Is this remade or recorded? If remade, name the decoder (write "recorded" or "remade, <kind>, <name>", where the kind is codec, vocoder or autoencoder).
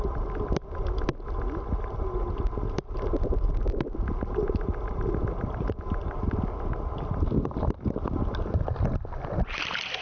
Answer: recorded